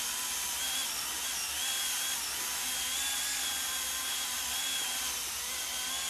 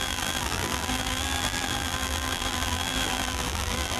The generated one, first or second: second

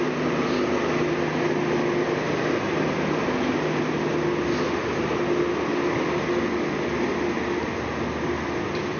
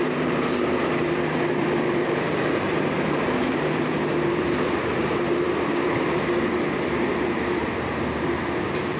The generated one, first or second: second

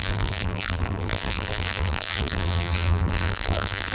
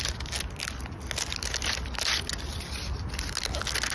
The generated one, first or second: first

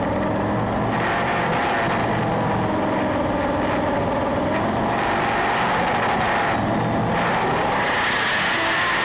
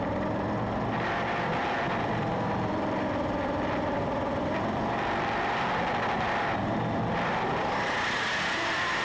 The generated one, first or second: second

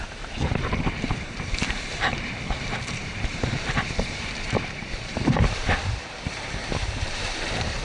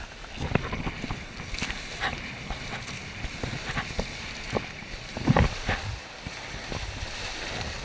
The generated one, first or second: first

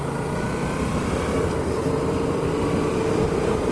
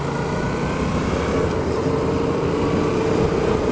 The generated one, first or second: first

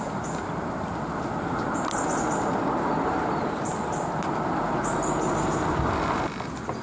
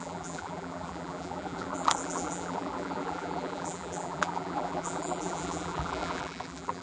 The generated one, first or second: second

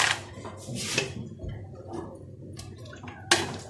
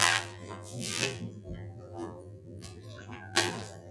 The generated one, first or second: second